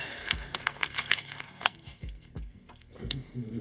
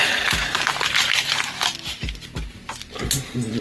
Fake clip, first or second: first